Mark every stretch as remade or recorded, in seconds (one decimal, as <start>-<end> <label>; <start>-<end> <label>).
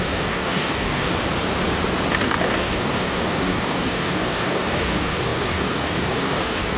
0.0-1.1 remade; 1.1-2.2 recorded; 2.2-6.8 remade